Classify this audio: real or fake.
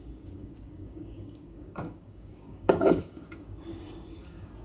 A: fake